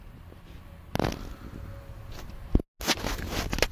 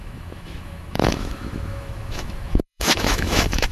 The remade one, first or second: second